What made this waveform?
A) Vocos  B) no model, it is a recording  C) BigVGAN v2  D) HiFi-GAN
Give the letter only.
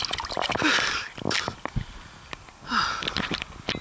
B